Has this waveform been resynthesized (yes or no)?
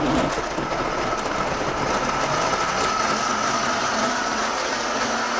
no